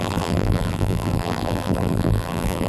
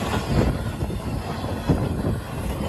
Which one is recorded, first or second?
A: second